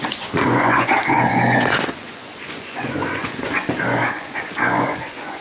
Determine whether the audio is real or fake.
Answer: fake